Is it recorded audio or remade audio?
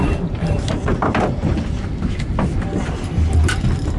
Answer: recorded